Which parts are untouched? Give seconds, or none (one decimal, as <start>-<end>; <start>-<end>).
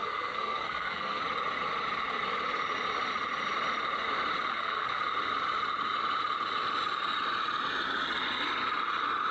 1.2-4.5; 5.0-9.3